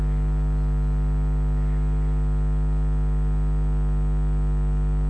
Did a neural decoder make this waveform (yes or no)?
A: no